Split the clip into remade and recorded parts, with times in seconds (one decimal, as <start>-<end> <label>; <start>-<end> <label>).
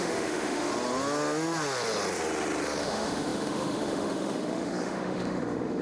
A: 0.0-0.7 remade; 0.7-2.8 recorded; 2.8-5.8 remade